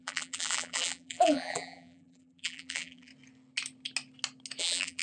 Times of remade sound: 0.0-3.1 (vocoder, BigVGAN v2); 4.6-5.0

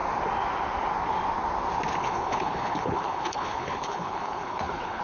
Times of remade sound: 2.0-5.0 (codec, HILCodec)